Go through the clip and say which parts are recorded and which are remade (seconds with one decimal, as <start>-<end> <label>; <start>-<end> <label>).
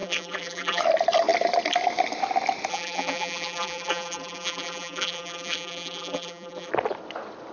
0.0-0.8 remade; 0.8-2.7 recorded; 2.7-6.7 remade; 6.7-7.5 recorded